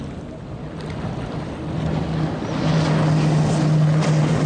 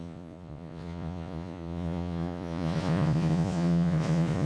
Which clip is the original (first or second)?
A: first